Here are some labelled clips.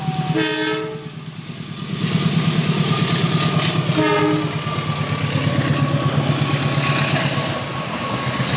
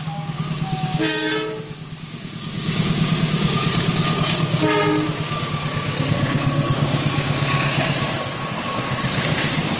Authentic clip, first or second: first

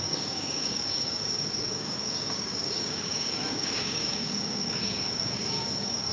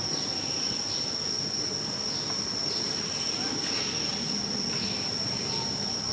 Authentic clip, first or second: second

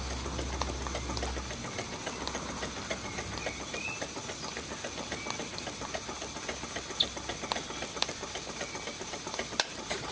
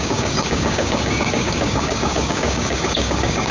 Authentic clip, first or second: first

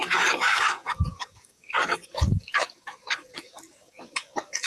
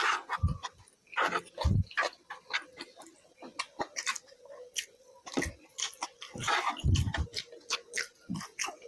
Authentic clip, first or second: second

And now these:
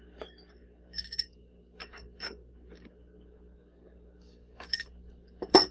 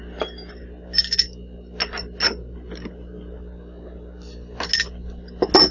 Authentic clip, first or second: second